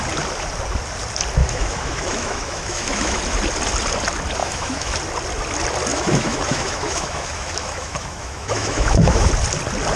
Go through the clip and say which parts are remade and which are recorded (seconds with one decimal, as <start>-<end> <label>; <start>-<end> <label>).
0.0-1.4 recorded; 1.4-3.2 remade; 3.2-4.4 recorded; 4.4-4.9 remade; 4.9-5.9 recorded; 5.9-9.3 remade; 9.3-10.0 recorded